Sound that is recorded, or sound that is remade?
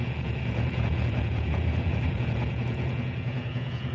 remade